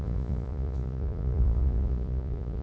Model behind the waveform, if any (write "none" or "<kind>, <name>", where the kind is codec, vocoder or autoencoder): vocoder, Vocos